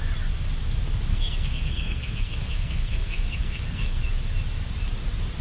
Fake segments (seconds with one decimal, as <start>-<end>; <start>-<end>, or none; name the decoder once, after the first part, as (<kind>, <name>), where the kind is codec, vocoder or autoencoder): 1.1-4.0 (codec, SNAC)